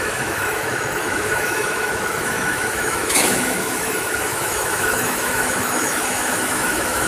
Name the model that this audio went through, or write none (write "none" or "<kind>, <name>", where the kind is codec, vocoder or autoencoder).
autoencoder, DAC-VAE